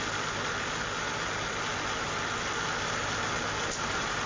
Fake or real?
real